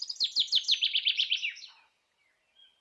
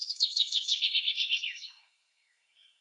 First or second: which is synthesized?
second